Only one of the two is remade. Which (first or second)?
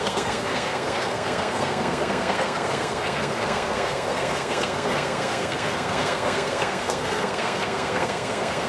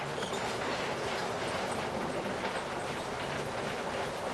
first